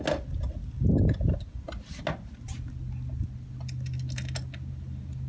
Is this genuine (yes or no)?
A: yes